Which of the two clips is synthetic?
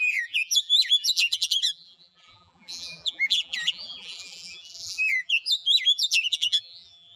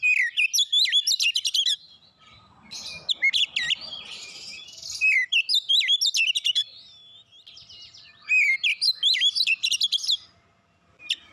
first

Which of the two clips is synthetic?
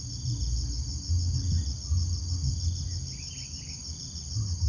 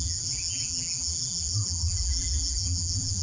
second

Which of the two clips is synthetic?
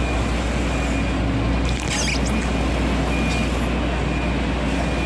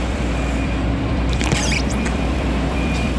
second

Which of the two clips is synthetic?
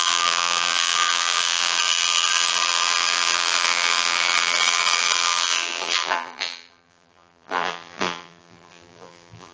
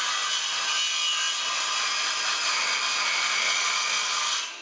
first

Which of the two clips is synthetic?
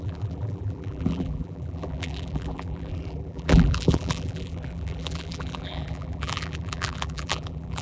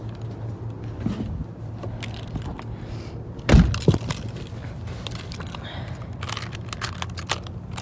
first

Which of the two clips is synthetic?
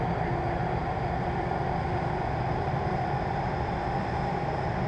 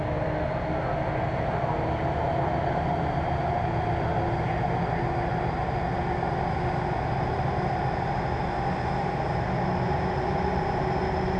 first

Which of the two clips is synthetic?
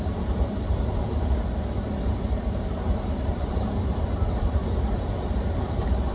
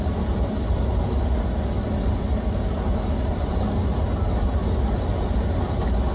first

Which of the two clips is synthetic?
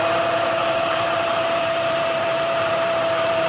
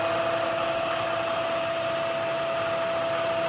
first